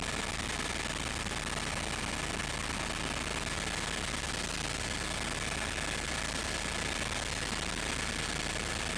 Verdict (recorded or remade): recorded